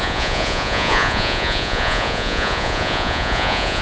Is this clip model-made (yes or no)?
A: yes